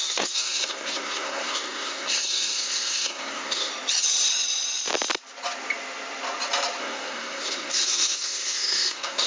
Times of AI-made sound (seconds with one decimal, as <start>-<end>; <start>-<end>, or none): 0.0-3.7; 6.8-9.3